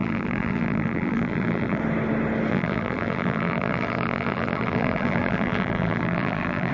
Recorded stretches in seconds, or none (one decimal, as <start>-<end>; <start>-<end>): 1.8-2.5